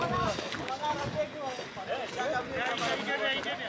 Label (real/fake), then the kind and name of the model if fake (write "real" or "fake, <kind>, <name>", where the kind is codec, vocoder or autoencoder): real